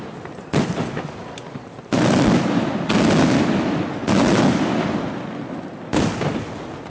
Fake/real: real